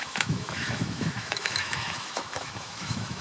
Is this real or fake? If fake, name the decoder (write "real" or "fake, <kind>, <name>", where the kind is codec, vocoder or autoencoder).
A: fake, autoencoder, DAC-VAE